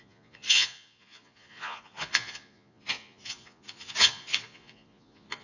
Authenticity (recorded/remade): remade